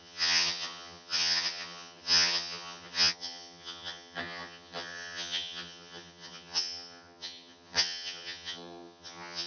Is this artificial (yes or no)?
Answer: yes